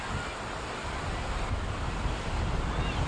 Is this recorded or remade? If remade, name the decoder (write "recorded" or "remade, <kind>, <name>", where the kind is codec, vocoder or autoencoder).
recorded